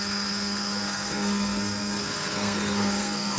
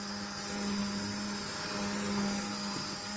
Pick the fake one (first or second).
first